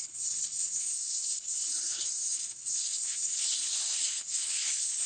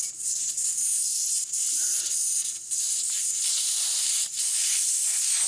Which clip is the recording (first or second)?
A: second